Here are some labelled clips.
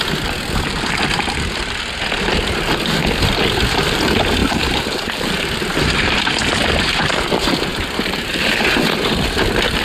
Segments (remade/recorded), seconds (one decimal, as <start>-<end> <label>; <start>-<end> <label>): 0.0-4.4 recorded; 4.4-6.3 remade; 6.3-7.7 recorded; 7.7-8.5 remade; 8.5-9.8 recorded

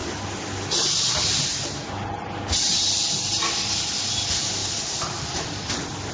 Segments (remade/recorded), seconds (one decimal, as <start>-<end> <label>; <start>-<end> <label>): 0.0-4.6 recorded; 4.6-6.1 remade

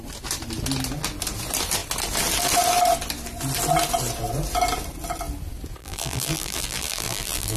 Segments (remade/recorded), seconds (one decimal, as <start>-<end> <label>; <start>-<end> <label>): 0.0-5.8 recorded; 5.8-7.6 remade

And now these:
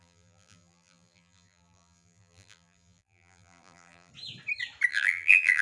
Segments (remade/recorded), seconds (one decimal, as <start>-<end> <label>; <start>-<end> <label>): 0.0-4.1 remade; 4.1-4.9 recorded; 4.9-5.6 remade